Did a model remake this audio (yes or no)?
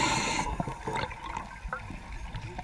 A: no